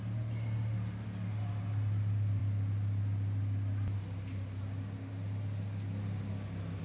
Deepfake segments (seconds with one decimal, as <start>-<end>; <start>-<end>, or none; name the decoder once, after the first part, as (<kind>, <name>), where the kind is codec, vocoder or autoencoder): none